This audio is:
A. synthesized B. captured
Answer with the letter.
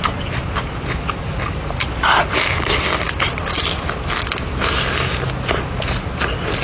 B